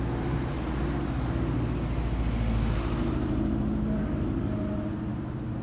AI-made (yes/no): no